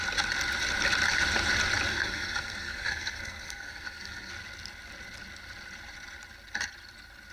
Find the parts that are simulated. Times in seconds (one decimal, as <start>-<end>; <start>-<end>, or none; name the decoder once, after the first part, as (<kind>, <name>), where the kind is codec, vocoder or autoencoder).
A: 1.9-4.3 (codec, SNAC)